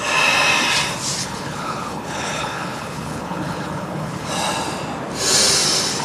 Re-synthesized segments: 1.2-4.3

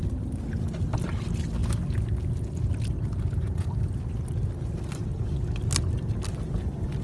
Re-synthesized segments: none

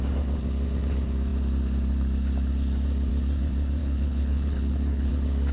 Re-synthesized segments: 3.8-5.1

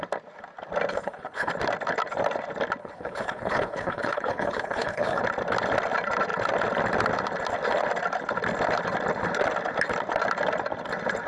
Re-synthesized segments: 0.9-1.5; 2.8-5.2

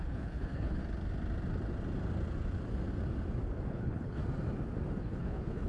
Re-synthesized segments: 0.0-0.8; 3.7-4.2; 5.0-5.7

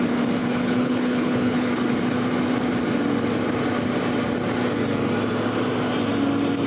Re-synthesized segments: 0.4-1.7